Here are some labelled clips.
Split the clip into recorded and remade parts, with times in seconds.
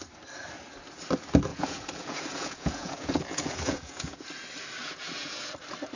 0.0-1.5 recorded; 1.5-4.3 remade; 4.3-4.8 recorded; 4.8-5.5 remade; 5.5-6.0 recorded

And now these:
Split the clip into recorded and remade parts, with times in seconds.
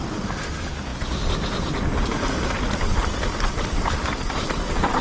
0.0-5.0 recorded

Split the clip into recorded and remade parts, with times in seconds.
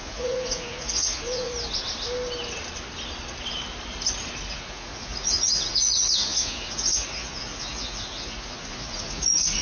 0.0-1.5 remade; 1.5-4.5 recorded; 4.5-9.6 remade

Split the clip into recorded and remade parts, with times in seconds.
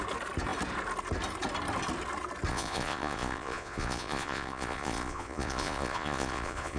0.0-2.5 recorded; 2.5-6.8 remade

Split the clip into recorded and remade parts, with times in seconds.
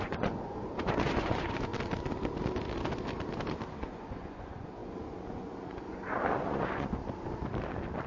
0.0-1.7 remade; 1.7-3.8 recorded; 3.8-7.0 remade; 7.0-8.1 recorded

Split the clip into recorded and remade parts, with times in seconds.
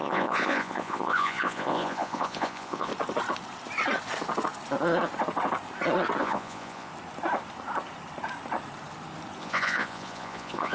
0.0-2.9 remade; 2.9-6.2 recorded; 6.2-6.9 remade; 6.9-9.4 recorded; 9.4-10.7 remade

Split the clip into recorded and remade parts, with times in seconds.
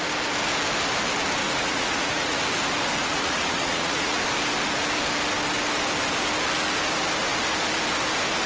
0.0-1.4 recorded; 1.4-2.4 remade; 2.4-3.0 recorded; 3.0-4.2 remade; 4.2-8.5 recorded